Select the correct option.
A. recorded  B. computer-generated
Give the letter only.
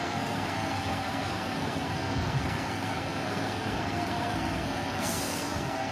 B